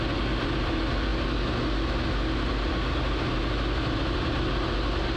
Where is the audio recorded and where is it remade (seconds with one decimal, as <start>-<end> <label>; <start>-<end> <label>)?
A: 0.0-5.2 recorded